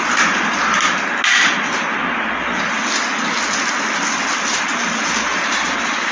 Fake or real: real